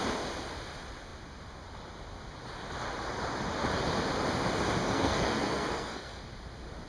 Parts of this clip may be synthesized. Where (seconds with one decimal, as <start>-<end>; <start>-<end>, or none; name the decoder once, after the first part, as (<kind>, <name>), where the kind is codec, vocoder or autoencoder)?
4.8-6.2 (codec, SNAC)